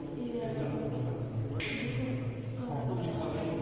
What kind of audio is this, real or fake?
real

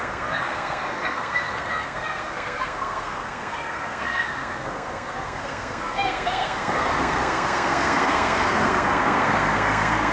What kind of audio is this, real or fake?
fake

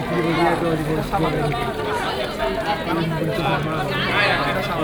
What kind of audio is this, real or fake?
real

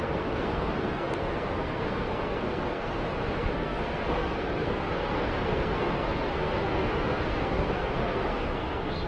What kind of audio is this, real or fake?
fake